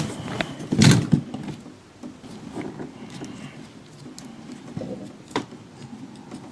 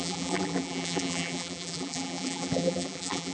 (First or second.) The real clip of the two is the first